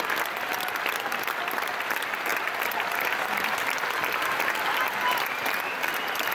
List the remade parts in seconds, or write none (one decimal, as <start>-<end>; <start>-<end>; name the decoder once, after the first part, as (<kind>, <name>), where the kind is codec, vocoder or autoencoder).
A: none